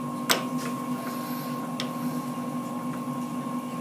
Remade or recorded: recorded